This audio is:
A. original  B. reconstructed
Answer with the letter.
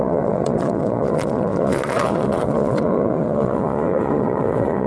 B